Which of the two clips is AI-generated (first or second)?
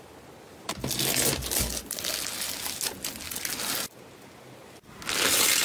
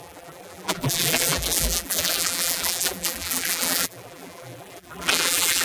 second